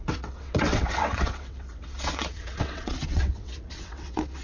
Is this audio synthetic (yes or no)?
yes